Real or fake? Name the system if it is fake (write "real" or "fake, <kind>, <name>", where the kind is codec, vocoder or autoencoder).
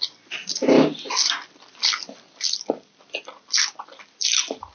real